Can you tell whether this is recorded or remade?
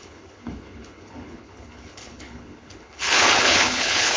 remade